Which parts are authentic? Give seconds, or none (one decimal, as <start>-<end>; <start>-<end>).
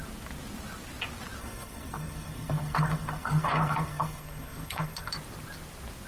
0.0-1.4; 5.1-6.1